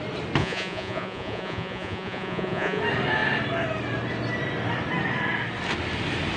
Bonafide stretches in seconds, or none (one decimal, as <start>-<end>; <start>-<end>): 0.0-0.4; 2.8-6.4